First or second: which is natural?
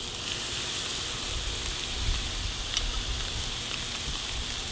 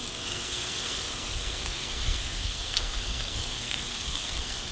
first